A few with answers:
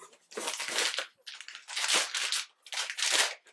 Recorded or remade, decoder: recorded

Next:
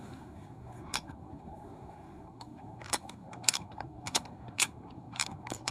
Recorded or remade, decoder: remade, codec, SNAC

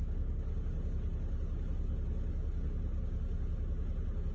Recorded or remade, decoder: recorded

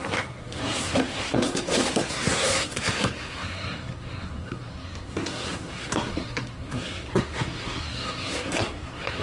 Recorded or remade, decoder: remade, codec, SNAC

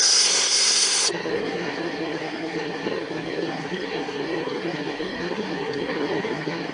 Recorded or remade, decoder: remade, codec, SNAC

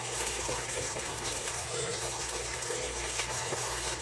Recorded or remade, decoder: remade, codec, SNAC